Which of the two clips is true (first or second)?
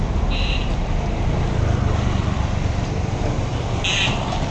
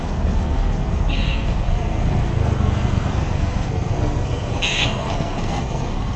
first